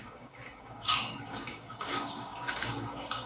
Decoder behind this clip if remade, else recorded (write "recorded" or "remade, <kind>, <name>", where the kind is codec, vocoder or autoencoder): remade, codec, DAC